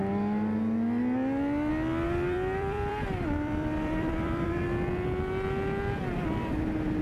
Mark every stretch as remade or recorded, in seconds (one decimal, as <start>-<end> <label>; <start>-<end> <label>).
0.0-1.7 recorded; 1.7-4.6 remade; 4.6-7.0 recorded